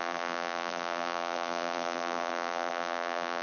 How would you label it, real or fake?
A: fake